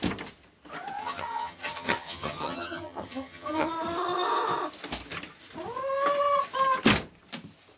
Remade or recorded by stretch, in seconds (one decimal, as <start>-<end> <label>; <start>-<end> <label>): 0.0-1.0 recorded; 1.0-3.7 remade; 3.7-7.8 recorded